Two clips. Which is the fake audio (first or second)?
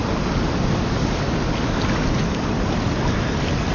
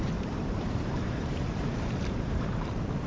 second